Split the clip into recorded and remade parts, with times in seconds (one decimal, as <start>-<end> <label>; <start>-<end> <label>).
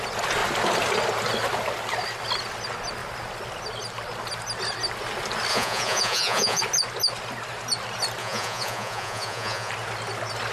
0.0-5.5 recorded; 5.5-6.6 remade; 6.6-8.2 recorded; 8.2-9.7 remade; 9.7-10.5 recorded